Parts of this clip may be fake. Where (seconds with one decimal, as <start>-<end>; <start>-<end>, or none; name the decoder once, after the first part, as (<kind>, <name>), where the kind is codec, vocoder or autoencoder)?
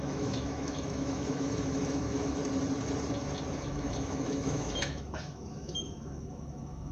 0.0-2.4 (autoencoder, DAC-VAE); 3.5-6.9